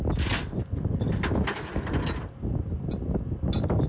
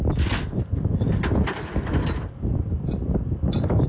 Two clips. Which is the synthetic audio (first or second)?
second